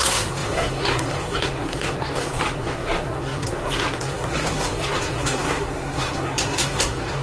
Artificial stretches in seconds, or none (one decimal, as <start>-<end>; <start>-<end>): 0.0-7.2

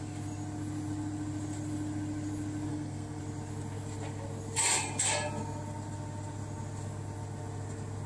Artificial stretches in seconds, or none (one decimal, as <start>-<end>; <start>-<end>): 2.7-3.2

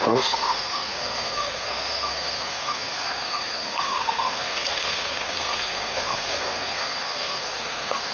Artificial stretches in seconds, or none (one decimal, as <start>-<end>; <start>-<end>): 0.0-8.1

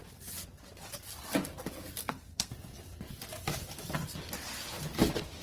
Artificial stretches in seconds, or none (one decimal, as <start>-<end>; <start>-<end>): 2.0-2.5

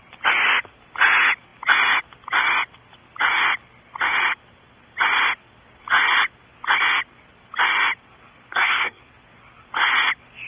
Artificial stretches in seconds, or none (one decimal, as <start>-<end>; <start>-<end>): 8.5-9.0

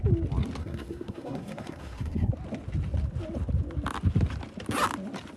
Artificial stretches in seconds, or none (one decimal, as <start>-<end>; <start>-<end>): 0.6-2.3

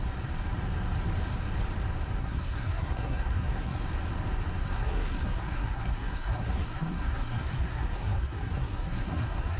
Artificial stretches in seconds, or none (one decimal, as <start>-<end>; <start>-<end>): 2.2-3.8; 4.6-9.6

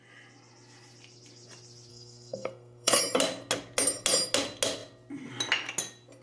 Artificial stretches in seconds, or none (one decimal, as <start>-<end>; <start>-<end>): 1.9-3.0